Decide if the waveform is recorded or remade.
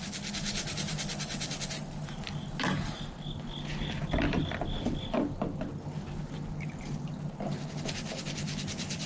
recorded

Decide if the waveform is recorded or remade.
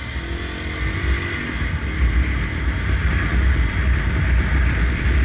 recorded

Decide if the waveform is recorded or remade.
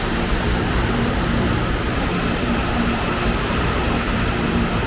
remade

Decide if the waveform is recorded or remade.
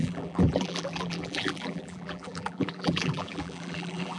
remade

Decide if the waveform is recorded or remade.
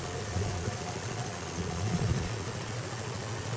remade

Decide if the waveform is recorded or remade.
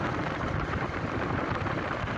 recorded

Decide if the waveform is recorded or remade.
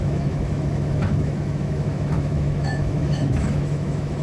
remade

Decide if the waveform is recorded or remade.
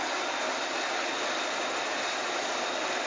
recorded